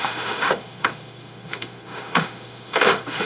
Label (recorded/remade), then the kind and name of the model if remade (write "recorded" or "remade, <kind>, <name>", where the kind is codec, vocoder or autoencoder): remade, autoencoder, DAC-VAE